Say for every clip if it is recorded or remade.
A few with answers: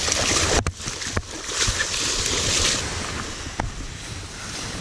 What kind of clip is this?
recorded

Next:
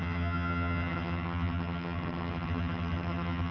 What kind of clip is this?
remade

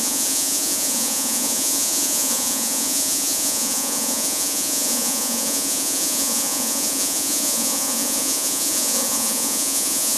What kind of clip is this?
remade